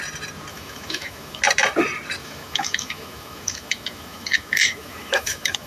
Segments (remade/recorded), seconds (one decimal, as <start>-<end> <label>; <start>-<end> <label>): 0.0-0.5 recorded; 0.5-1.4 remade; 1.4-2.2 recorded; 2.2-5.7 remade